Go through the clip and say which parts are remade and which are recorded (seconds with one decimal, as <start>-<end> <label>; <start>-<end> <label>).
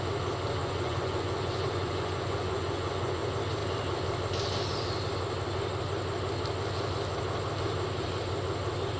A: 0.0-0.6 recorded; 0.6-3.2 remade; 3.2-9.0 recorded